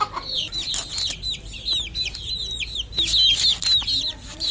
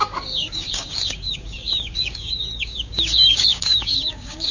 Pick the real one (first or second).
first